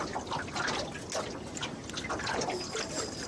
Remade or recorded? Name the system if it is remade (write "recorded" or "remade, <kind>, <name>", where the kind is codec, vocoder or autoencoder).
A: recorded